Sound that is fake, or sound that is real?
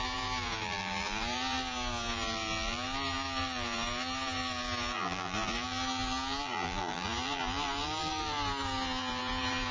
fake